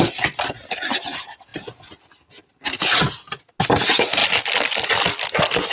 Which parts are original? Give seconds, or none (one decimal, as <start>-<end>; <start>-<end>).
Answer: 0.0-5.7